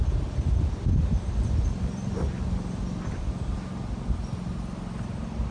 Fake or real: real